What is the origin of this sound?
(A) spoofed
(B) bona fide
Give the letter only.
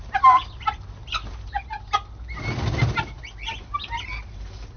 B